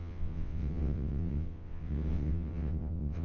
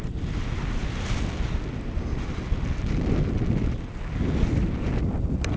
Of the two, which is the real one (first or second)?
second